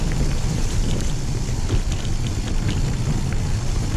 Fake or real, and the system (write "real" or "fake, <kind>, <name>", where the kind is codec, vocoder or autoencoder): real